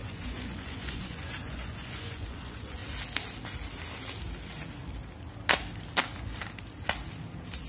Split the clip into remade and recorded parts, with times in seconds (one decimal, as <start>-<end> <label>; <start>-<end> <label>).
0.0-2.8 remade; 2.8-7.7 recorded

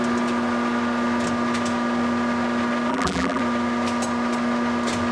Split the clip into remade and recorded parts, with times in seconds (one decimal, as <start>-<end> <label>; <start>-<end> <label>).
0.0-2.9 recorded; 2.9-3.4 remade; 3.4-5.1 recorded

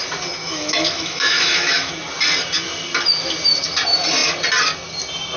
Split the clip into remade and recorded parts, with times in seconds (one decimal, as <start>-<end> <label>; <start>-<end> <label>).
0.0-0.4 recorded; 0.4-1.9 remade; 1.9-5.4 recorded

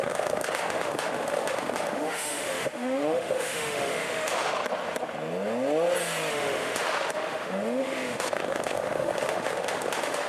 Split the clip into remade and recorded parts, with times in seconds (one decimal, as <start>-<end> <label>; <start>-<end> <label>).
0.0-4.6 remade; 4.6-6.3 recorded; 6.3-10.3 remade

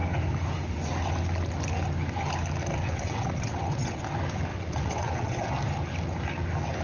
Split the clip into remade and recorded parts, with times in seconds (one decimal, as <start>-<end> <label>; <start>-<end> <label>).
0.0-2.8 recorded; 2.8-4.0 remade; 4.0-4.5 recorded; 4.5-5.5 remade; 5.5-6.8 recorded

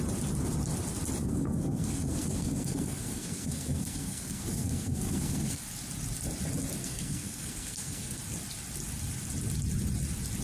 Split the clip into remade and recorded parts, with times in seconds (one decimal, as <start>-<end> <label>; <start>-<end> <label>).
0.0-1.2 recorded; 1.2-5.6 remade; 5.6-6.8 recorded; 6.8-8.2 remade; 8.2-10.4 recorded

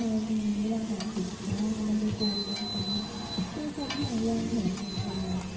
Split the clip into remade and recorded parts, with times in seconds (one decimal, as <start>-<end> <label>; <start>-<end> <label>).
0.0-5.6 recorded

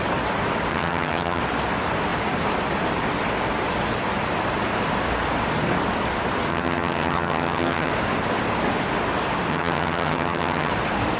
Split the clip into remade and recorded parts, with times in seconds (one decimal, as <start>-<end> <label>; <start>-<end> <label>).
0.0-0.7 recorded; 0.7-1.4 remade; 1.4-6.5 recorded; 6.5-7.9 remade; 7.9-9.5 recorded; 9.5-10.7 remade; 10.7-11.2 recorded